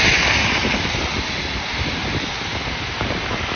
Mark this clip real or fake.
real